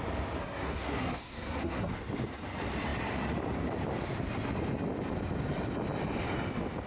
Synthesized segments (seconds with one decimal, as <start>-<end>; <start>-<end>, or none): 0.4-1.9